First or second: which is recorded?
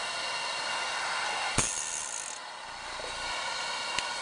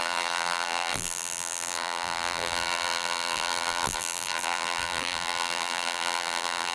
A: first